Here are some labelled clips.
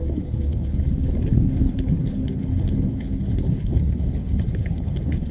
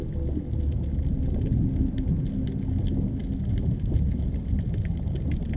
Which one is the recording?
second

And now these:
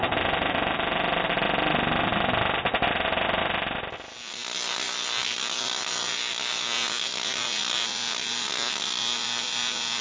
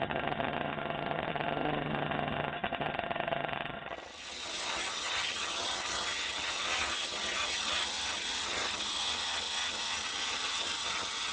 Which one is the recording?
first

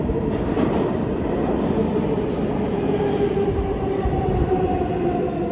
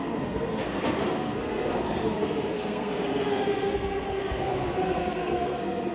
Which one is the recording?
first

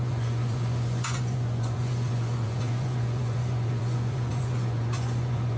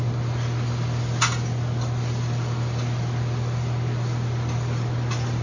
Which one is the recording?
second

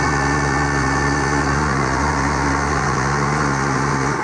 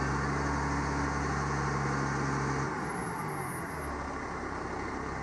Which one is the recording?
second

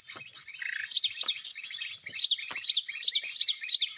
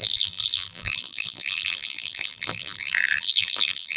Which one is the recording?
first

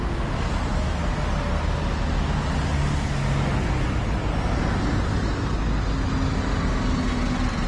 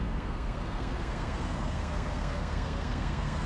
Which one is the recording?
first